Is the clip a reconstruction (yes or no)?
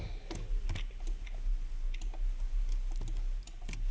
no